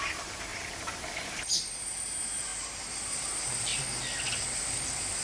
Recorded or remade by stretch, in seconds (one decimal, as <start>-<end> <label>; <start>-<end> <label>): 0.0-0.5 remade; 0.5-1.5 recorded; 1.5-3.7 remade; 3.7-4.3 recorded; 4.3-5.2 remade